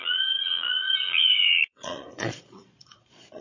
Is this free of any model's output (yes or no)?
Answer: no